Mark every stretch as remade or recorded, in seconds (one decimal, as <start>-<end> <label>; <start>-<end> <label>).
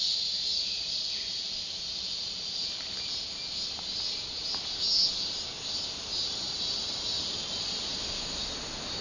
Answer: 0.0-9.0 recorded